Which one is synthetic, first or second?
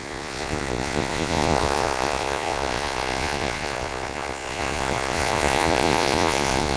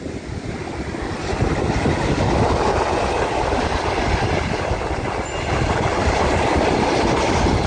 first